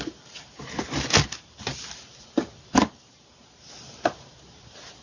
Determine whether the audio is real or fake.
fake